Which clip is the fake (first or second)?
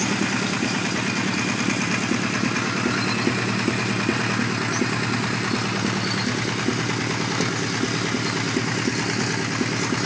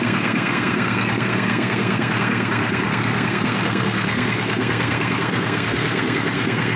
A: second